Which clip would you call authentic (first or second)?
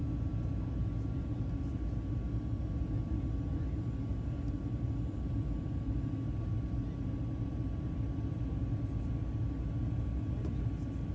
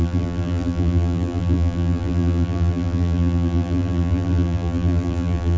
first